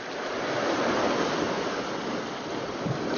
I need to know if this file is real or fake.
real